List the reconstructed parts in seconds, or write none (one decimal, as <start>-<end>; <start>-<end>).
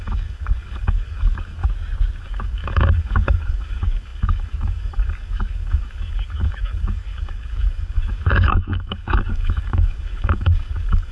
0.0-1.6; 2.2-11.1